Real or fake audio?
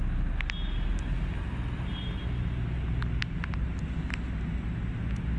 real